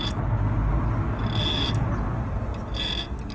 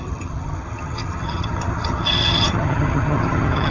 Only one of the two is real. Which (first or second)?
first